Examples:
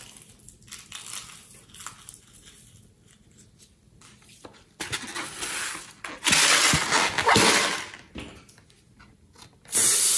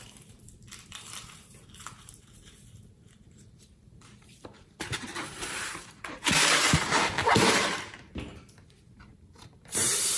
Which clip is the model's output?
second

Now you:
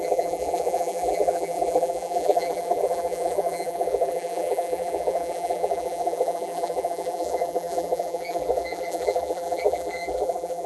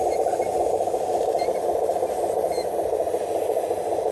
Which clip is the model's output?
first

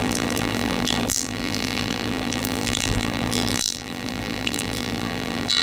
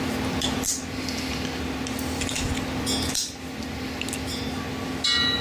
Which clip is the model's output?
first